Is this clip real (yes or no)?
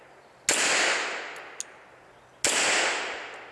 yes